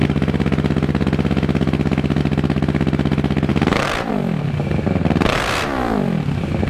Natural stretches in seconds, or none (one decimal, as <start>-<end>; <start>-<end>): 0.0-6.7